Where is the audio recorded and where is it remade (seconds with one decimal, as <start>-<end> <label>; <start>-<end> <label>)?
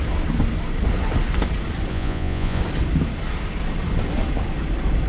0.0-1.9 recorded; 1.9-2.6 remade; 2.6-5.1 recorded